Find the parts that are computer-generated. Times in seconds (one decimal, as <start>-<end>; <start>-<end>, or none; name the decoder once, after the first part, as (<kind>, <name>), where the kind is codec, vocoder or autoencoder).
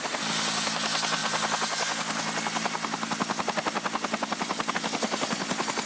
none